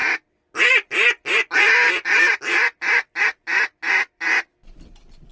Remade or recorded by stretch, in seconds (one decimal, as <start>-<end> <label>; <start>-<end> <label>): 0.0-5.3 recorded